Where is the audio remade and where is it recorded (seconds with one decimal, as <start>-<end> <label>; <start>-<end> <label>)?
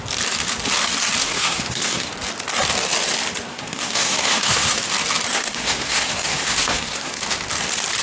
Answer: 0.0-1.2 recorded; 1.2-2.1 remade; 2.1-3.5 recorded; 3.5-4.8 remade; 4.8-5.3 recorded; 5.3-7.2 remade; 7.2-8.0 recorded